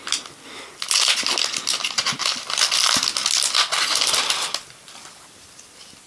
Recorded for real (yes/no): yes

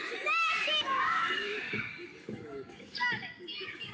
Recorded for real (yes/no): no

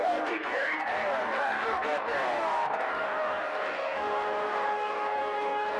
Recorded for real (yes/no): no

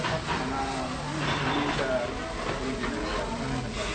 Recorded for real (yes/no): yes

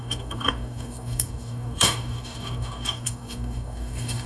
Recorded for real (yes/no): no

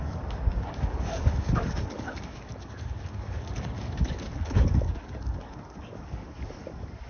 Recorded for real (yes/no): no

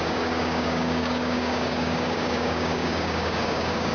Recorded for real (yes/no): no